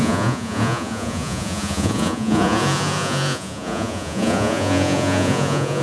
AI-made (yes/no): yes